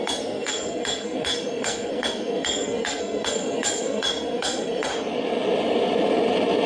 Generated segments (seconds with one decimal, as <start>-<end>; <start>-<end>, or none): 0.0-4.9